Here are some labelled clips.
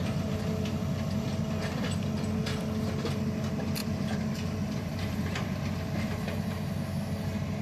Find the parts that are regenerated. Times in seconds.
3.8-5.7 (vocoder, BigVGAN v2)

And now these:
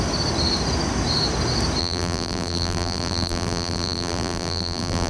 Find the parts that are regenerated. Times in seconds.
1.8-5.1 (vocoder, BigVGAN v2)

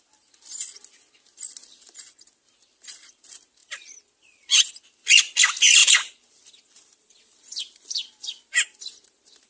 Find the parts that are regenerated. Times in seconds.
3.6-4.7 (vocoder, BigVGAN v2); 5.8-8.8

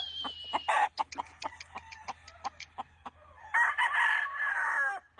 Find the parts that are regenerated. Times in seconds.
none